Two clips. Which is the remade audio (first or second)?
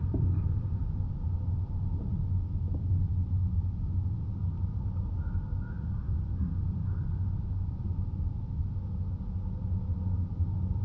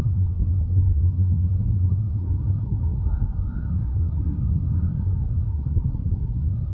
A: second